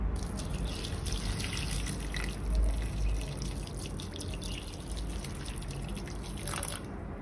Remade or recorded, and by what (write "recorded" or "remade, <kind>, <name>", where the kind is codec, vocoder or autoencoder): recorded